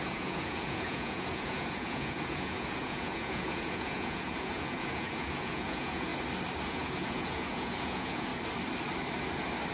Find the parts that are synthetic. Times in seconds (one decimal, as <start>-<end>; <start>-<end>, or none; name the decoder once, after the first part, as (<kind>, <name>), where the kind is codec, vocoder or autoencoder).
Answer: 0.0-6.1 (vocoder, Vocos); 6.7-8.3